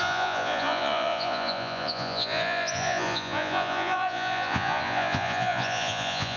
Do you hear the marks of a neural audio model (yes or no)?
yes